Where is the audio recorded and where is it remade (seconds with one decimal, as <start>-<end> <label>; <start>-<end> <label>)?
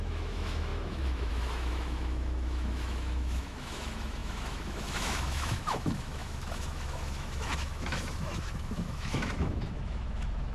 0.0-10.5 remade